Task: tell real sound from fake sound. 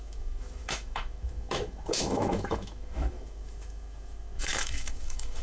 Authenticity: fake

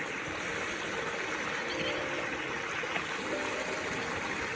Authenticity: real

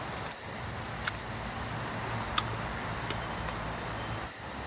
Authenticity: real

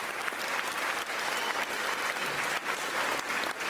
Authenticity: real